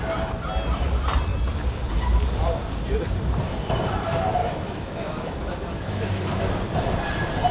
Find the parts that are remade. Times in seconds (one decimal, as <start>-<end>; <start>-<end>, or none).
4.4-6.4